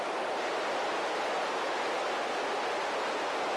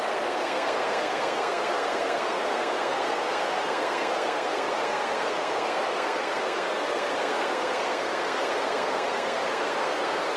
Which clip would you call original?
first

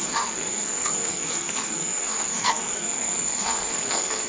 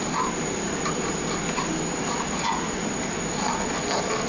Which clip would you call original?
second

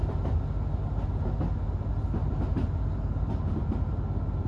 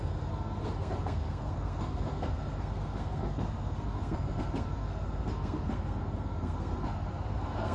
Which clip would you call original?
first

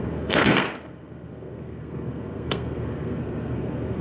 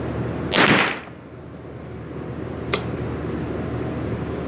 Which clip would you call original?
second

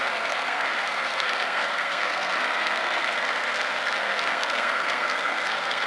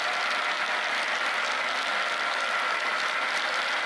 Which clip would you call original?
second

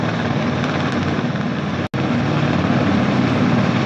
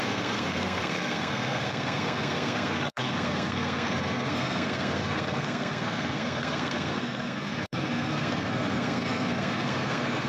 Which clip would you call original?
first